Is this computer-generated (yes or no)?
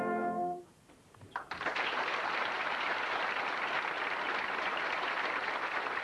yes